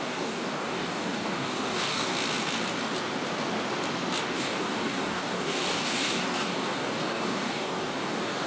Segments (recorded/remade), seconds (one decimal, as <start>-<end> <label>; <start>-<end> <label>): 0.0-2.1 remade; 2.1-4.2 recorded; 4.2-8.5 remade